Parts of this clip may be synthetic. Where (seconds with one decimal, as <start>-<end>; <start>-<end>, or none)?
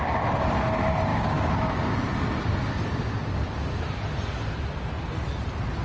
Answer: 1.1-2.0